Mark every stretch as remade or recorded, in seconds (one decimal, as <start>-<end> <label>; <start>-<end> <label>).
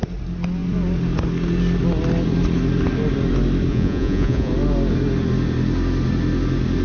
0.0-3.7 recorded; 3.7-4.5 remade; 4.5-6.8 recorded